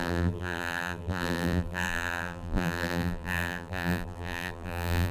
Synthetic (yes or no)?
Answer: yes